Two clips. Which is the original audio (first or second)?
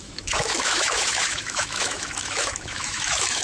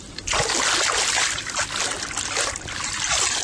second